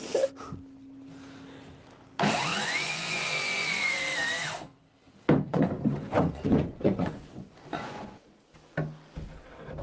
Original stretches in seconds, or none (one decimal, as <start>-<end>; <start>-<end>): 0.0-2.5; 4.0-5.5; 8.3-9.8